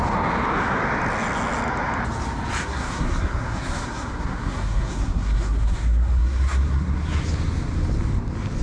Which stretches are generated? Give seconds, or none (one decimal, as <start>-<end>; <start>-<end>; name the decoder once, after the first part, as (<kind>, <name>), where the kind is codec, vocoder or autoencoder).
2.6-7.2 (codec, SNAC)